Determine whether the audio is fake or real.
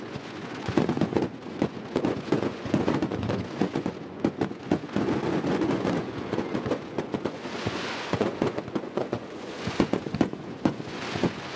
fake